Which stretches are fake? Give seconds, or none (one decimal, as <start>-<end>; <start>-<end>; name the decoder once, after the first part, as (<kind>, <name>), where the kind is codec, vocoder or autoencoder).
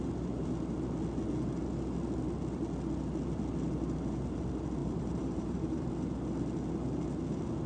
4.8-5.9 (vocoder, BigVGAN v2)